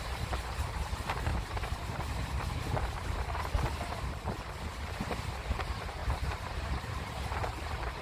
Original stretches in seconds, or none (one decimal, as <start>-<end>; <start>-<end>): 0.0-1.3; 3.2-6.0; 7.5-8.0